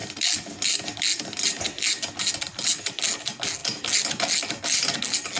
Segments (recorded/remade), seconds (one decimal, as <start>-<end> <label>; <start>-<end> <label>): 0.0-5.4 recorded